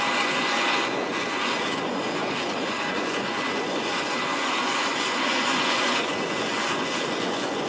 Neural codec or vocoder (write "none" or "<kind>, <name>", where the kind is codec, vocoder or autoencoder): vocoder, Vocos